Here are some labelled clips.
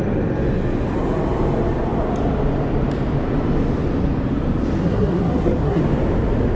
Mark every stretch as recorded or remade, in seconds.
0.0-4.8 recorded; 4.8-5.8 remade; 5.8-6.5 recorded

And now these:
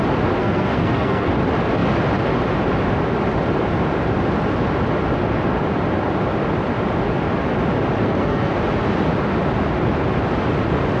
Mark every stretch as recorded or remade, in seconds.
0.0-0.4 recorded; 0.4-1.3 remade; 1.3-8.0 recorded; 8.0-8.5 remade; 8.5-11.0 recorded